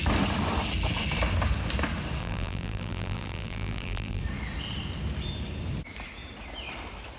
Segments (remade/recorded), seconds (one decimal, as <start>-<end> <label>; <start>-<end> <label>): 0.0-2.2 recorded; 2.2-4.2 remade; 4.2-7.2 recorded